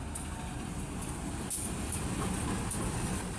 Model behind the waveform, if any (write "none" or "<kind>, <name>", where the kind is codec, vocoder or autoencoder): none